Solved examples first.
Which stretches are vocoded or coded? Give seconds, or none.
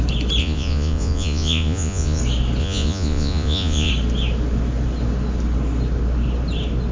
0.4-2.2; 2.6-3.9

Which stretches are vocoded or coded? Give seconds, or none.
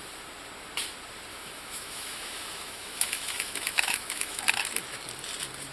1.3-4.4